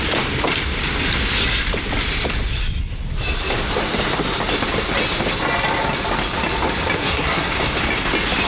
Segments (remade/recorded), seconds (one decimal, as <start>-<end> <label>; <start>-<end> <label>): 0.0-7.0 recorded; 7.0-7.5 remade; 7.5-8.5 recorded